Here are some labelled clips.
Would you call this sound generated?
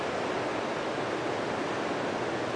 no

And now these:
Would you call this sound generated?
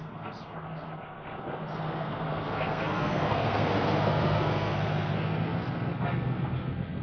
yes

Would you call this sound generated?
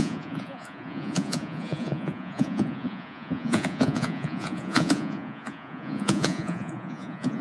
yes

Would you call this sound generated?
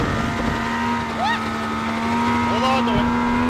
no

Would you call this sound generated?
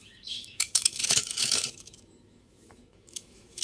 yes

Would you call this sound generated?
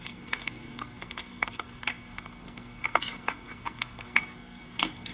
yes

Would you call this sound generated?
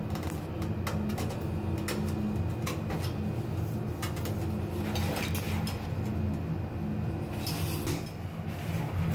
no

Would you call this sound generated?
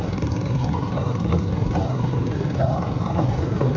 yes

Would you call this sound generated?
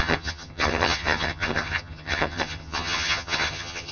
yes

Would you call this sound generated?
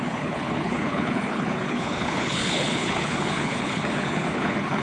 yes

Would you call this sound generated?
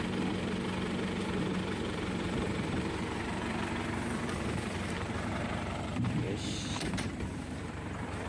yes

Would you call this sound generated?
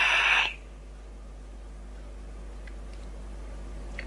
no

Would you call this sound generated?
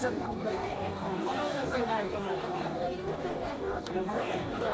yes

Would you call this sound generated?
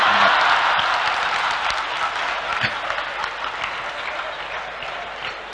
no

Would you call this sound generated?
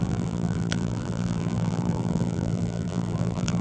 yes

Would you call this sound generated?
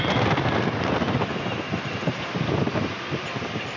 no